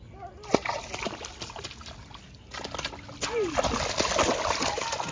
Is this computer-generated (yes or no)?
no